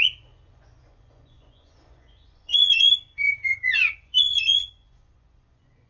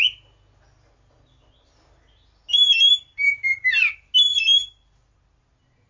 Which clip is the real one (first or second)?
second